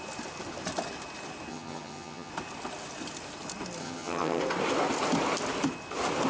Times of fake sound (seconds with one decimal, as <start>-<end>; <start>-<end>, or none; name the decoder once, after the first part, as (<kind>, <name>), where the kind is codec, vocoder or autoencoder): 1.5-2.3 (vocoder, HiFi-GAN); 3.8-4.4